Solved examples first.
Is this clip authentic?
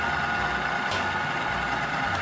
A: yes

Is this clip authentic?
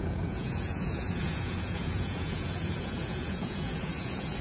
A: no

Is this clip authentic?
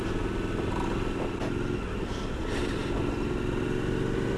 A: yes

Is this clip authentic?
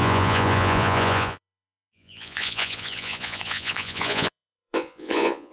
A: no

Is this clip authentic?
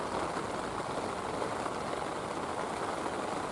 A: yes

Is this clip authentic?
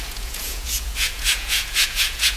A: no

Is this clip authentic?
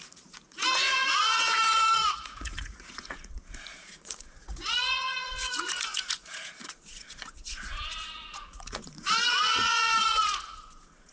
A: no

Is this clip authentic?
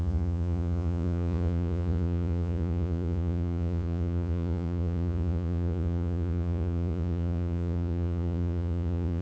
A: no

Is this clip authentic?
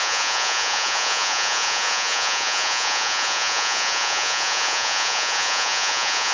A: no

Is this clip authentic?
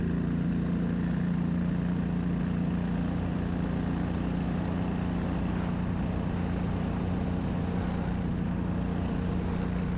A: yes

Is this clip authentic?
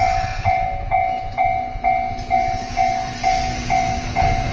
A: no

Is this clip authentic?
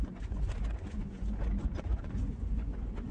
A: no